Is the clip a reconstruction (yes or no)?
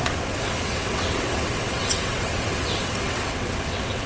yes